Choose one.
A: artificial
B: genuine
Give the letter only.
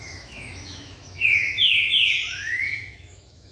A